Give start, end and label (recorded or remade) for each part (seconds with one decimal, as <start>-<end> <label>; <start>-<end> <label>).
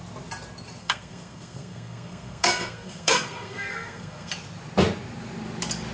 0.0-0.8 recorded; 0.8-4.3 remade; 4.3-5.9 recorded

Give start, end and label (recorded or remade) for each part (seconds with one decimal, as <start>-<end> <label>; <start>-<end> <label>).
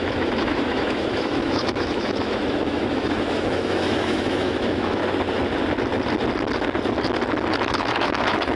0.0-5.0 remade; 5.0-7.7 recorded; 7.7-8.6 remade